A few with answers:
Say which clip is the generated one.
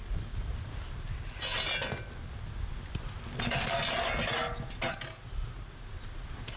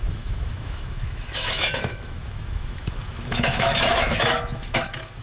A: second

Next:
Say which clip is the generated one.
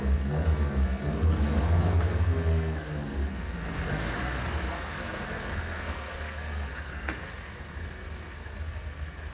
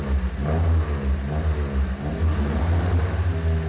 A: first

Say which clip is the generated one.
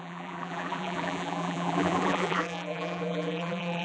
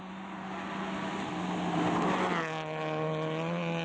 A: first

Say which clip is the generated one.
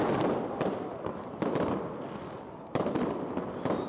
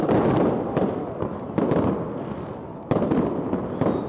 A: first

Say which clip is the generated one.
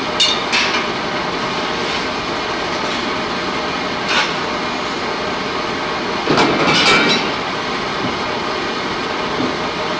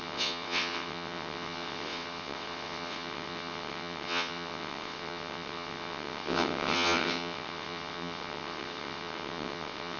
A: second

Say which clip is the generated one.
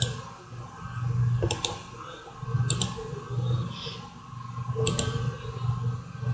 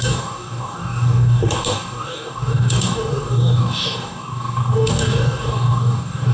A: second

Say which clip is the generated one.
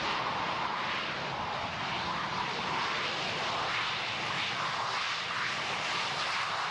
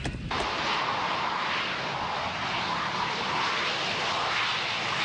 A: first